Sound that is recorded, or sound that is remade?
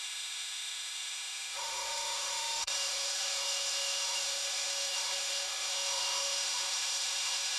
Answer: remade